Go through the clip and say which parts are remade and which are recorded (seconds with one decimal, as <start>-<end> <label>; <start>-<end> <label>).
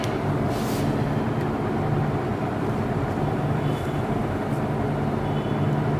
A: 0.0-2.3 recorded; 2.3-4.2 remade; 4.2-6.0 recorded